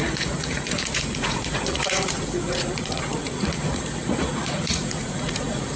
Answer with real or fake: fake